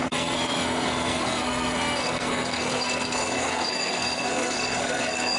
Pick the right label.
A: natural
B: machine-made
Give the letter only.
B